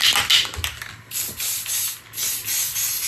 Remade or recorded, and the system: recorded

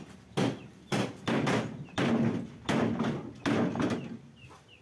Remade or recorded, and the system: recorded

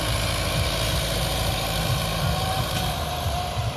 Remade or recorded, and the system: remade, vocoder, BigVGAN v2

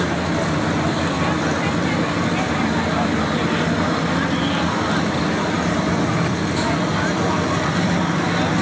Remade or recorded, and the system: recorded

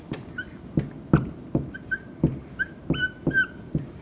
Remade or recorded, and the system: remade, vocoder, BigVGAN v2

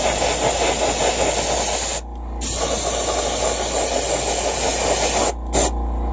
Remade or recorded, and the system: recorded